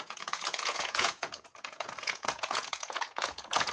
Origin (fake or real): fake